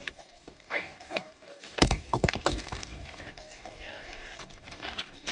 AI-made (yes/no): yes